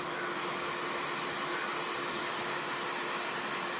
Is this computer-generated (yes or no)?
no